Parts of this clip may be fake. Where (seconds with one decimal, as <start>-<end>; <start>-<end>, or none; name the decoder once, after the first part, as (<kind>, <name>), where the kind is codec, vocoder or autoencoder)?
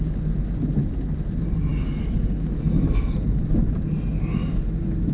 none